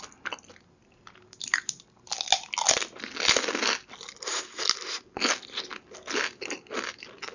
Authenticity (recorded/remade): recorded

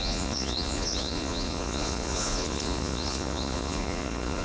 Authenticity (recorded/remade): remade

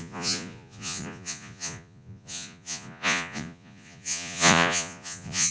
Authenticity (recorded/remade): remade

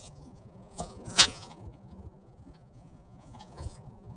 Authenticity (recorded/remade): remade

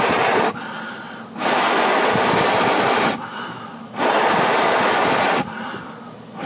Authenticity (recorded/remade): recorded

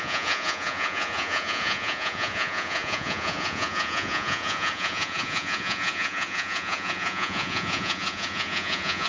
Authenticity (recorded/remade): remade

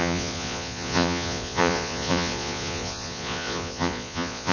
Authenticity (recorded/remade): remade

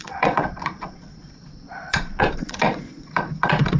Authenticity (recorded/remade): remade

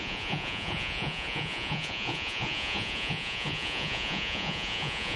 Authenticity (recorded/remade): remade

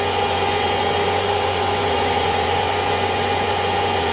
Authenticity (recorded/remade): remade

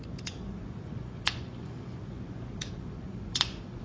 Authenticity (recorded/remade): remade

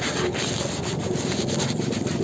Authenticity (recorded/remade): recorded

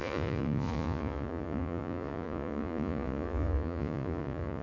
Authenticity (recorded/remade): remade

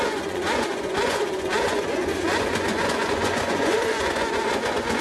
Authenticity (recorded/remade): remade